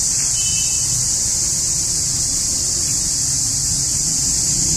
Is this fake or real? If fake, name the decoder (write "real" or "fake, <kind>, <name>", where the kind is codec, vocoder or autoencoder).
real